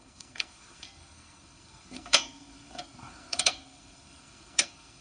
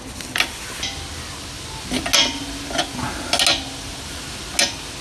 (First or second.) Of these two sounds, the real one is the second